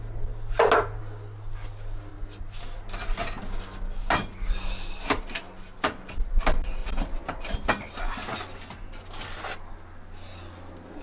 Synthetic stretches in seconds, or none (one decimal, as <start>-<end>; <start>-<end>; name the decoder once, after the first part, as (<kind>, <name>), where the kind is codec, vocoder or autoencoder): 2.1-2.6 (vocoder, BigVGAN v2); 6.8-8.0